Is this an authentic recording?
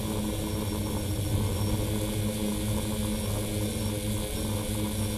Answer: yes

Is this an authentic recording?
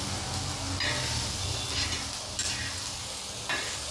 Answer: yes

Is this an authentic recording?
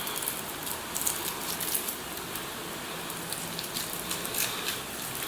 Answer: yes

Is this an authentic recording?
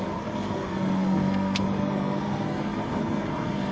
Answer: no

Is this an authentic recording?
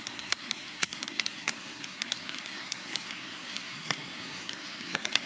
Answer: no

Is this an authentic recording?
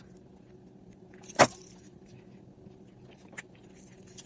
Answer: yes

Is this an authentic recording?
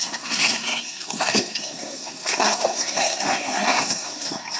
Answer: no